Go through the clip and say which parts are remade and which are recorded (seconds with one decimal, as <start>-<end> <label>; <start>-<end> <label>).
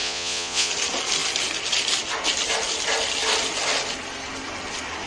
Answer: 0.0-0.7 remade; 0.7-5.1 recorded